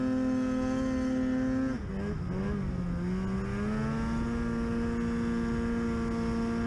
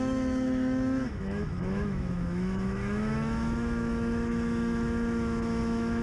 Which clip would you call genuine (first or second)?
first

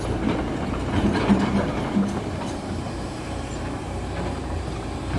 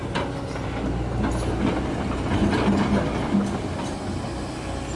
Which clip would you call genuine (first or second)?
second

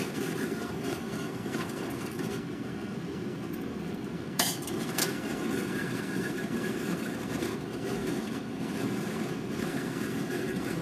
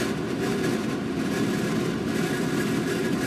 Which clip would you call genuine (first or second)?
second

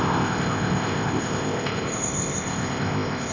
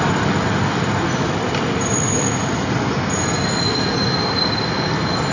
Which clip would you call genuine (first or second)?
second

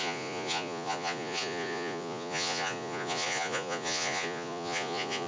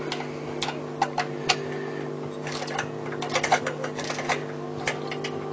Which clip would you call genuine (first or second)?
second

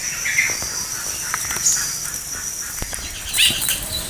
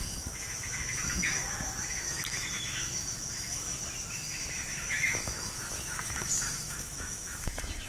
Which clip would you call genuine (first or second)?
first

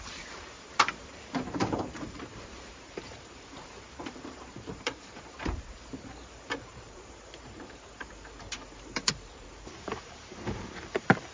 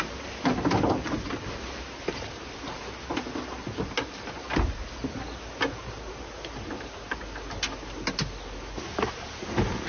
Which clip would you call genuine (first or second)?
second